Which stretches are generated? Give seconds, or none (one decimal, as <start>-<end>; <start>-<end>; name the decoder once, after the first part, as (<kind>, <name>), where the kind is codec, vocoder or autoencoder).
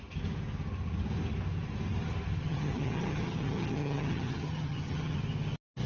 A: 2.4-5.2 (vocoder, HiFi-GAN)